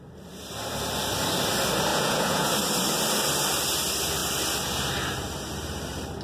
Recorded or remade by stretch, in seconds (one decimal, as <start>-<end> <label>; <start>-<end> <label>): 0.0-1.9 recorded; 1.9-2.5 remade; 2.5-6.2 recorded